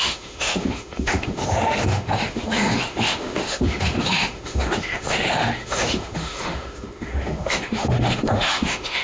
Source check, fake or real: fake